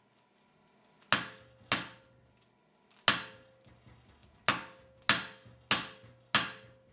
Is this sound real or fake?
real